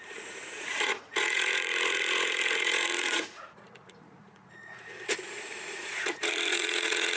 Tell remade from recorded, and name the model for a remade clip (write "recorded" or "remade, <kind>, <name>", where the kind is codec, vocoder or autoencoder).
remade, vocoder, Vocos